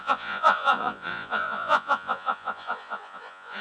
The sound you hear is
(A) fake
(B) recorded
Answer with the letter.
A